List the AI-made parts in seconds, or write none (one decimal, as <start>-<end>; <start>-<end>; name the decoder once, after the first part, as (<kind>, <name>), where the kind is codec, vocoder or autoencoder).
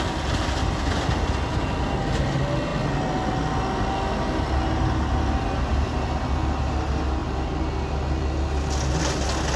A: none